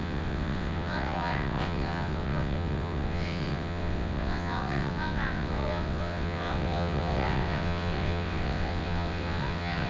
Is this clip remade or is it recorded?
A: remade